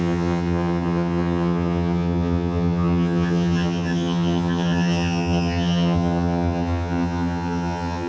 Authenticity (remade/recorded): remade